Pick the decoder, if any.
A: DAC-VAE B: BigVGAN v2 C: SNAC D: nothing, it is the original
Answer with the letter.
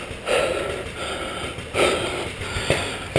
D